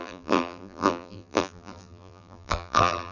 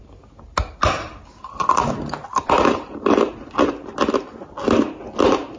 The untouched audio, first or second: second